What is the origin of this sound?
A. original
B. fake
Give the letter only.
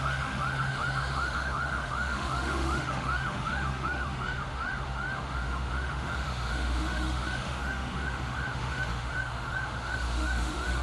B